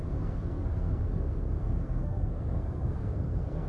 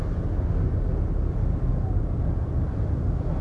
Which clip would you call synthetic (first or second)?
first